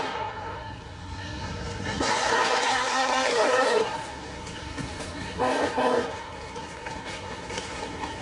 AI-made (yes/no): yes